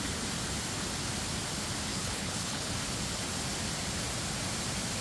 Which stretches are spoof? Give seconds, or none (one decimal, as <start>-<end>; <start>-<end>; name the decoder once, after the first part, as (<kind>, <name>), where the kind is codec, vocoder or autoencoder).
1.9-2.7 (codec, HILCodec)